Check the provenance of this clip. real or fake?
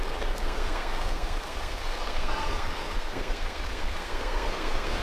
fake